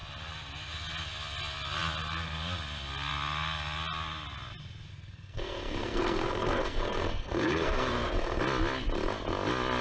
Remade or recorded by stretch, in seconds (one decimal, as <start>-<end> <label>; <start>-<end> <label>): 0.0-4.9 recorded; 4.9-8.4 remade; 8.4-9.8 recorded